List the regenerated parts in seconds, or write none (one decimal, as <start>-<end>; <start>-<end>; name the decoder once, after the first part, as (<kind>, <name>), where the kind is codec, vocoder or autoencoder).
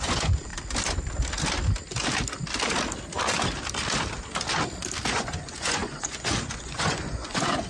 0.0-0.5 (vocoder, Vocos); 5.1-7.7